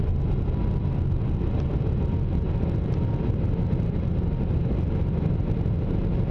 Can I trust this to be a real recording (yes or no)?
yes